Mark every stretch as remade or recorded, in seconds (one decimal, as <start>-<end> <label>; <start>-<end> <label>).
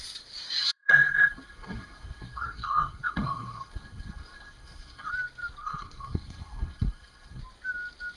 0.0-0.6 recorded; 0.6-5.1 remade; 5.1-5.6 recorded; 5.6-7.4 remade; 7.4-8.2 recorded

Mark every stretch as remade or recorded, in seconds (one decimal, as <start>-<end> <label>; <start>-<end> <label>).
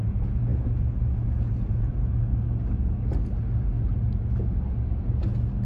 0.0-2.3 remade; 2.3-5.7 recorded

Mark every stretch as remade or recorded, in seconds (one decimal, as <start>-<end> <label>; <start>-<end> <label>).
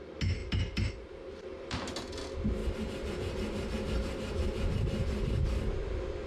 0.0-0.4 recorded; 0.4-0.9 remade; 0.9-2.6 recorded; 2.6-6.3 remade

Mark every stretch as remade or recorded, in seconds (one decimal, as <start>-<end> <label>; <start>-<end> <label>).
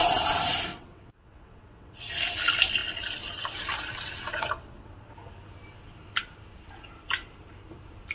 0.0-0.7 recorded; 0.7-2.1 remade; 2.1-3.9 recorded; 3.9-4.9 remade; 4.9-8.1 recorded